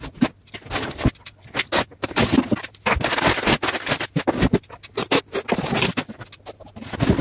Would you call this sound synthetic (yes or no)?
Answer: no